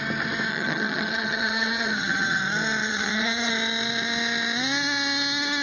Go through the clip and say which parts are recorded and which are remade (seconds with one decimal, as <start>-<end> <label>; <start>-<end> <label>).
0.0-0.5 recorded; 0.5-2.4 remade; 2.4-2.8 recorded; 2.8-3.5 remade; 3.5-5.6 recorded